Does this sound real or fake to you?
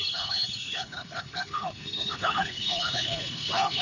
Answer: fake